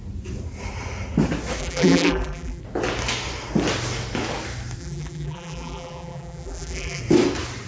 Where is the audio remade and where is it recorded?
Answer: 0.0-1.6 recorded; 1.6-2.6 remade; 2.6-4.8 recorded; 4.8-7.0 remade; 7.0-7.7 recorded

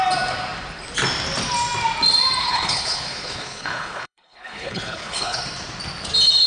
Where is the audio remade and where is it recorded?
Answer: 0.0-2.4 recorded; 2.4-5.4 remade; 5.4-6.5 recorded

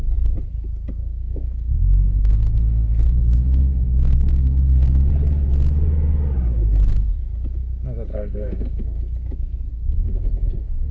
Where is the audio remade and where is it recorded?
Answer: 0.0-1.0 recorded; 1.0-5.1 remade; 5.1-8.1 recorded; 8.1-9.0 remade; 9.0-9.7 recorded; 9.7-10.9 remade

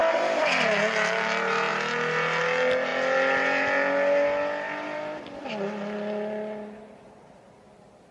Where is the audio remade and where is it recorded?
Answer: 0.0-8.1 recorded

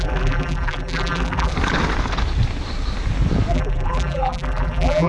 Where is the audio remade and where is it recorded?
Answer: 0.0-1.5 remade; 1.5-3.5 recorded; 3.5-5.1 remade

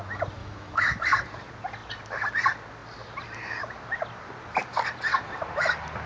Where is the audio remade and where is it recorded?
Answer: 0.0-0.4 recorded; 0.4-1.0 remade; 1.0-6.1 recorded

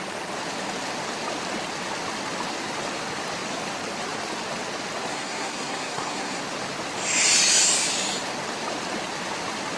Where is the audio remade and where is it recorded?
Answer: 0.0-5.1 recorded; 5.1-6.4 remade; 6.4-9.8 recorded

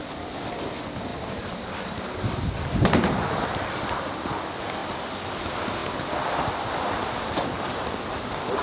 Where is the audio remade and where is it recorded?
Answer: 0.0-1.1 recorded; 1.1-4.1 remade; 4.1-4.8 recorded; 4.8-5.3 remade; 5.3-5.8 recorded; 5.8-6.5 remade; 6.5-8.6 recorded